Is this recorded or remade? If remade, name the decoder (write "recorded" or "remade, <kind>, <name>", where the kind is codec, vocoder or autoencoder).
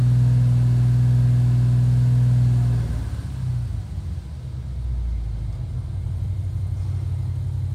recorded